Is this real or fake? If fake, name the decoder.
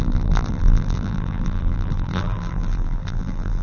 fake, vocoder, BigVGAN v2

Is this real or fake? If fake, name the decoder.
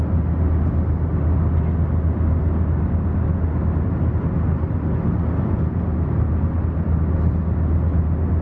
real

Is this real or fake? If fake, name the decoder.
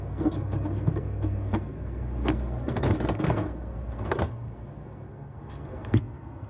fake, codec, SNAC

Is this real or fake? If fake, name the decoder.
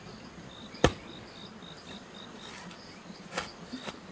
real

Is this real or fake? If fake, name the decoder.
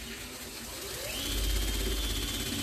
real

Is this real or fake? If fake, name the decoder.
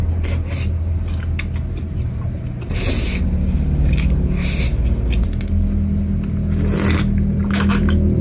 real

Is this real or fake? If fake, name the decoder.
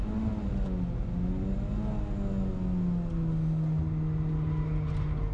real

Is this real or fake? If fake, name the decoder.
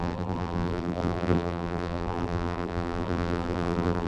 fake, vocoder, BigVGAN v2